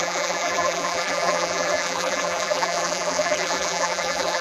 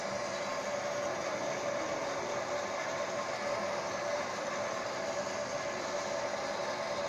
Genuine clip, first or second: second